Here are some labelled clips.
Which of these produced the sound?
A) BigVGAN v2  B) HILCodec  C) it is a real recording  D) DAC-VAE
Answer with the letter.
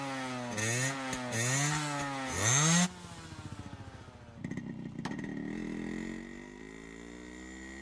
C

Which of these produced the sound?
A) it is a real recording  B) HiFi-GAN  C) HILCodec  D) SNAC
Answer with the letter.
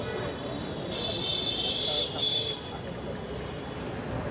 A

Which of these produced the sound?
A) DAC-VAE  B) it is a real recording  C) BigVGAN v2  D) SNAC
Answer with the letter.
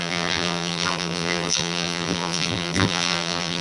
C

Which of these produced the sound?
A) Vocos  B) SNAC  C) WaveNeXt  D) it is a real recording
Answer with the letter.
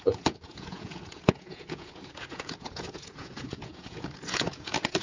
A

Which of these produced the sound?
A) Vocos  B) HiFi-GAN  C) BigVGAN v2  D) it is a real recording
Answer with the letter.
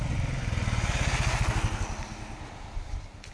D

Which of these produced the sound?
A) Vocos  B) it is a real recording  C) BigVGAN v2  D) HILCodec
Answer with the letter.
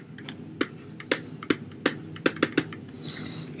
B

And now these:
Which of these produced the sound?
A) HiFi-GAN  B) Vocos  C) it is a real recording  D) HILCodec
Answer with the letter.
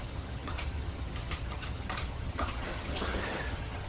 A